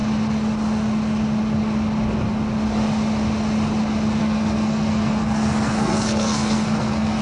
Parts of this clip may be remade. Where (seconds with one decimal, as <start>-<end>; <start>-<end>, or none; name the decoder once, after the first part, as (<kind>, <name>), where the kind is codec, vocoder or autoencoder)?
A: 4.2-7.2 (codec, SNAC)